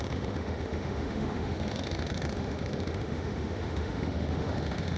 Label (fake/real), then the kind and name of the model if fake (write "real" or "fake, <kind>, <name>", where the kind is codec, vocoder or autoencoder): fake, autoencoder, DAC-VAE